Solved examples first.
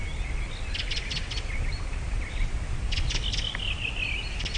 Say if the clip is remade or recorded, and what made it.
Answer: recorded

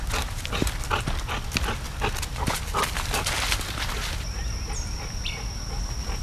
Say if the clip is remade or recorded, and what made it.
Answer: recorded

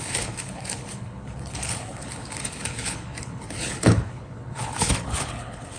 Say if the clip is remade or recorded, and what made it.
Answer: remade, codec, HILCodec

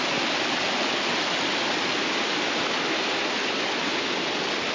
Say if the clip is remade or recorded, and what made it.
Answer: recorded